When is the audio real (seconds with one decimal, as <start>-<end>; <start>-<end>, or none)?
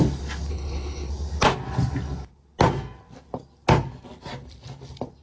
0.0-0.5; 1.1-5.2